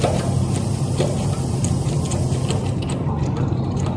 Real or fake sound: real